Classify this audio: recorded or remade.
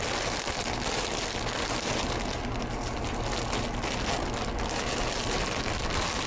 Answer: recorded